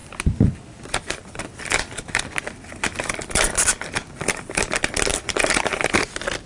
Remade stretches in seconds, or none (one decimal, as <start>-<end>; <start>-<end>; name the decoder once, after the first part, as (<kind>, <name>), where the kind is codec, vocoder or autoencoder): 0.0-3.8 (vocoder, BigVGAN v2); 5.1-5.7